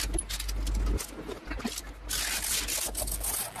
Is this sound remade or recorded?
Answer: recorded